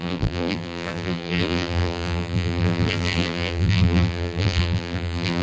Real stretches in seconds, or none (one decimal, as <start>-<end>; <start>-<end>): none